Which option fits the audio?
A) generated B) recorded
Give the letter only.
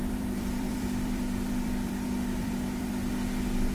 A